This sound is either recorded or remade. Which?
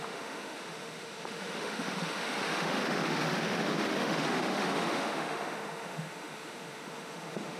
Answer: remade